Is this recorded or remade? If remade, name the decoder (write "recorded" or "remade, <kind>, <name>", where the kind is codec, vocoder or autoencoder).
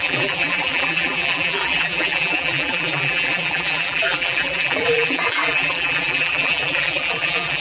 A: remade, vocoder, BigVGAN v2